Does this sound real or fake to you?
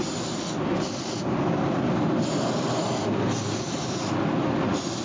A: real